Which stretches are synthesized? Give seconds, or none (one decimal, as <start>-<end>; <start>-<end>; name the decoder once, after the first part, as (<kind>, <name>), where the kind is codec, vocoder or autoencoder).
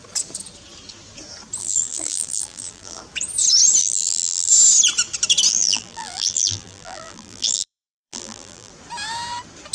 1.6-3.0 (vocoder, BigVGAN v2); 3.8-4.5; 5.5-8.7